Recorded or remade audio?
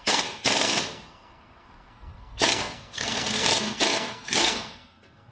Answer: remade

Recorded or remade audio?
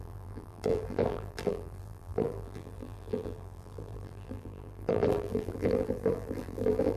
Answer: remade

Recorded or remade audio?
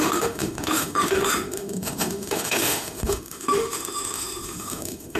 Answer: remade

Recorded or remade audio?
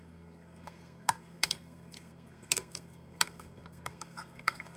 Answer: remade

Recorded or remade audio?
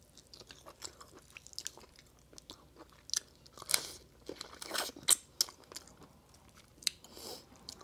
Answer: recorded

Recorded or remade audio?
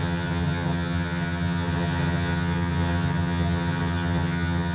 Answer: remade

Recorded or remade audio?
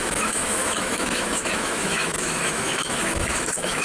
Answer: remade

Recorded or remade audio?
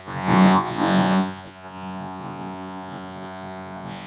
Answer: remade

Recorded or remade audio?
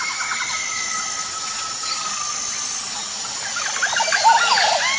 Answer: recorded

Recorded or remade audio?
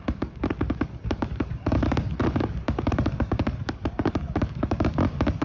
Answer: remade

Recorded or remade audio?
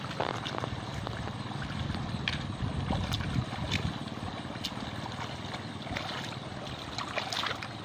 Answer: recorded